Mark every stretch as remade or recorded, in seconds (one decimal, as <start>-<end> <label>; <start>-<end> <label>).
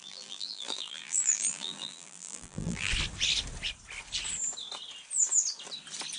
0.0-2.9 remade; 2.9-6.2 recorded